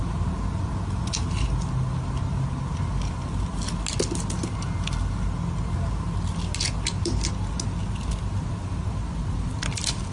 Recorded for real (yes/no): yes